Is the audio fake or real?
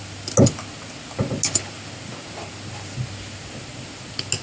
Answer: real